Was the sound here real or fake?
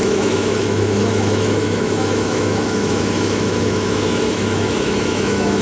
fake